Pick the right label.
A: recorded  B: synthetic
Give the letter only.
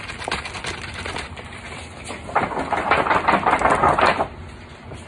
A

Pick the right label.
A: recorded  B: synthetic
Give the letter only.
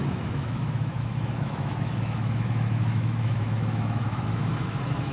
B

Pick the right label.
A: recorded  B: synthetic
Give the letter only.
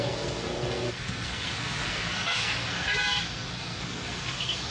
B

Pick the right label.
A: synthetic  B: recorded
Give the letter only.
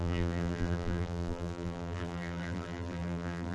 A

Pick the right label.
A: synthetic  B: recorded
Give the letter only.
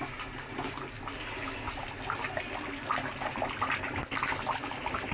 B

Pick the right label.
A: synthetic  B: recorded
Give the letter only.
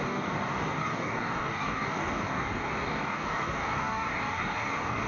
A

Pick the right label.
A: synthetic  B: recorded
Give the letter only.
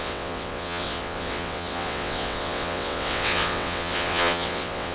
A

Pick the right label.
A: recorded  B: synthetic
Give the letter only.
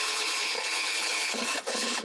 B